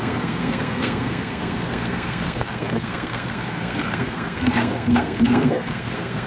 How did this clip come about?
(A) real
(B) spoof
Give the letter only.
B